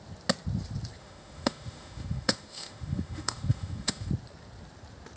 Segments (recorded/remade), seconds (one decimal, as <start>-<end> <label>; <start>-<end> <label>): 0.0-1.0 recorded; 1.0-4.1 remade; 4.1-5.2 recorded